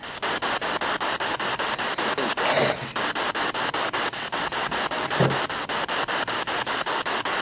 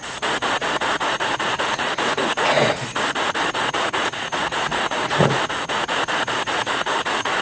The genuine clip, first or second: first